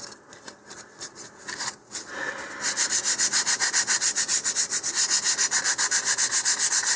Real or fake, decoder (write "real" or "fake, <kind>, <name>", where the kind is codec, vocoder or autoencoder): real